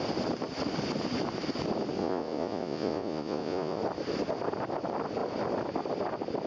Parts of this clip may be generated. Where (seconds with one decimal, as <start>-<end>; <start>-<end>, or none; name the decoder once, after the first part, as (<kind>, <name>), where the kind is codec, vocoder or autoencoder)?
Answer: 2.0-3.8 (vocoder, Vocos)